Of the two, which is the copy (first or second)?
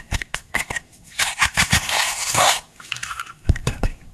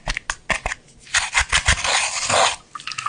first